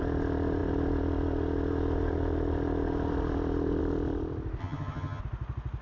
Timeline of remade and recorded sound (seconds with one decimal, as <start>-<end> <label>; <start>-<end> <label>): 0.0-4.6 recorded; 4.6-5.2 remade; 5.2-5.8 recorded